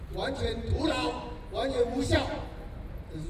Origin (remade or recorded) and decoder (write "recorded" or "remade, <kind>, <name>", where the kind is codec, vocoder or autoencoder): recorded